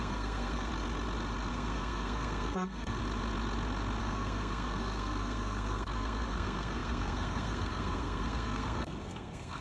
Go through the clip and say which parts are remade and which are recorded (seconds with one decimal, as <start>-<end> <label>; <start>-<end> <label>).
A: 0.0-0.7 remade; 0.7-1.5 recorded; 1.5-3.0 remade; 3.0-4.0 recorded; 4.0-9.6 remade